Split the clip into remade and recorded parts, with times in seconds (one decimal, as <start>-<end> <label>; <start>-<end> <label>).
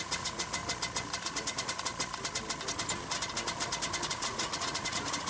0.0-0.6 remade; 0.6-1.2 recorded; 1.2-1.9 remade; 1.9-4.1 recorded; 4.1-5.3 remade